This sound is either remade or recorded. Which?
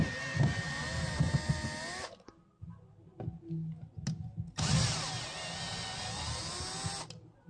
recorded